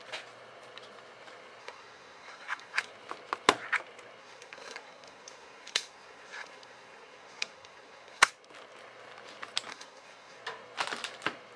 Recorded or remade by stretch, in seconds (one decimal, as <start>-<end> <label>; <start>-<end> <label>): 0.0-1.6 recorded; 1.6-2.9 remade; 2.9-4.2 recorded; 4.2-8.3 remade; 8.3-9.7 recorded; 9.7-10.4 remade; 10.4-11.6 recorded